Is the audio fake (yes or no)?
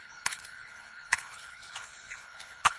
yes